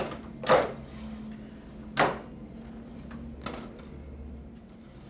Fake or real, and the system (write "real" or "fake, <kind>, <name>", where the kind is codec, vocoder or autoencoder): real